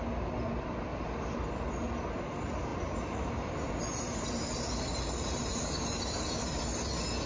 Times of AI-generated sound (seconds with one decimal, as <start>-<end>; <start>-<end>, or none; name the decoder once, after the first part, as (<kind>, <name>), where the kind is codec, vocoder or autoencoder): 0.9-1.5 (vocoder, BigVGAN v2); 2.7-6.6